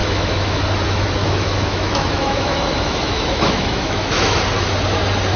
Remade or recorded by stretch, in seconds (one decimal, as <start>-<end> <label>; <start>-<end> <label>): 0.0-0.6 remade; 0.6-1.2 recorded; 1.2-4.4 remade; 4.4-5.4 recorded